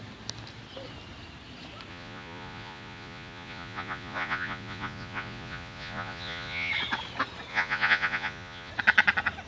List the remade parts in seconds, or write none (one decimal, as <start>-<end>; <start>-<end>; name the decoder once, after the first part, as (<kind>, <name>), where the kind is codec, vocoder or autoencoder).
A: 1.9-6.7 (vocoder, Vocos); 7.5-8.7